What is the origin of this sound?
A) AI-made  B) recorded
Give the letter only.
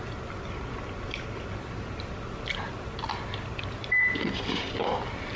B